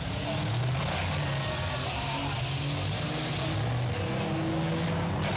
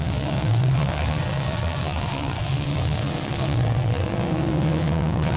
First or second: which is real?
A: first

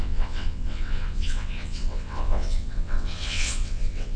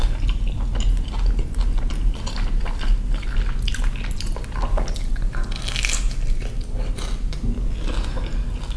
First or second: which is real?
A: second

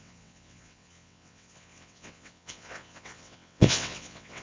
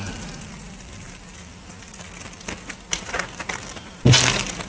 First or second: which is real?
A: second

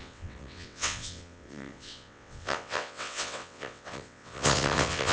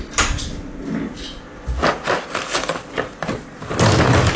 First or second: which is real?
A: second